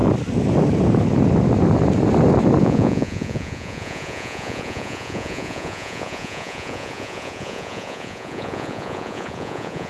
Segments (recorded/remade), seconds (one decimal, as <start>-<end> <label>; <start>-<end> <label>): 0.0-2.6 recorded; 2.6-9.9 remade